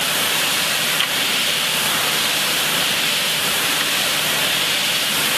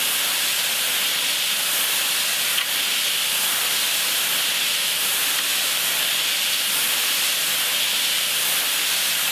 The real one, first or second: second